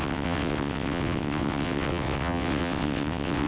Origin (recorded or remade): remade